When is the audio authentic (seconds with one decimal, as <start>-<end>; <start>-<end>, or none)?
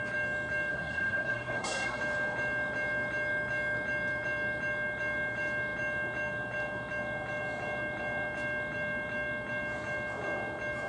0.0-0.7; 2.0-10.9